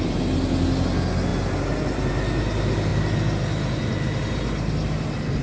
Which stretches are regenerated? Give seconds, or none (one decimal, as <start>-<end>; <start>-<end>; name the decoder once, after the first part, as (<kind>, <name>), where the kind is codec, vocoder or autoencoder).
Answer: none